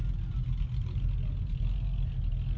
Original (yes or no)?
yes